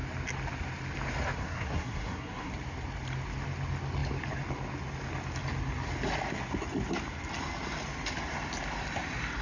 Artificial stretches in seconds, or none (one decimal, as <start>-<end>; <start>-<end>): 1.4-2.5